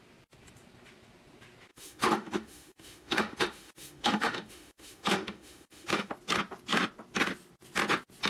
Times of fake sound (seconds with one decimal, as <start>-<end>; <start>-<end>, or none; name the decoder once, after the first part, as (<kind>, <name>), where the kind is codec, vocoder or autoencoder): 1.7-6.1 (autoencoder, DAC-VAE)